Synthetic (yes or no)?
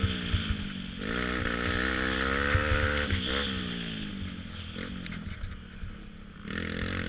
no